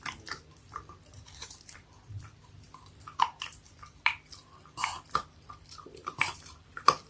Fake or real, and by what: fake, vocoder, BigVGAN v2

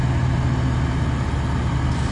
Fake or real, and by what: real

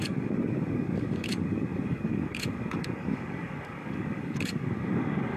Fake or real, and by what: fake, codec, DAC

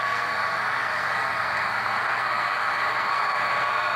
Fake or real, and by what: fake, codec, SNAC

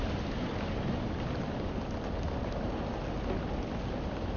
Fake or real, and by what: real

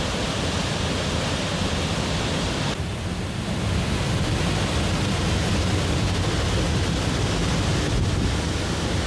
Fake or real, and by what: real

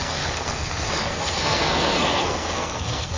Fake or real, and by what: fake, codec, SNAC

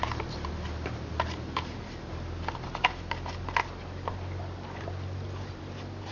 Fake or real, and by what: real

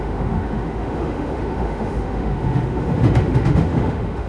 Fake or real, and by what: fake, autoencoder, DAC-VAE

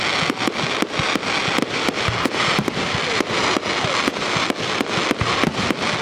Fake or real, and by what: real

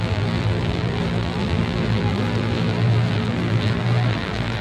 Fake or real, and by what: fake, vocoder, BigVGAN v2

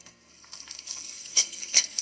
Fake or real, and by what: fake, codec, SNAC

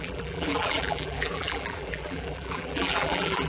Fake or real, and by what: fake, vocoder, BigVGAN v2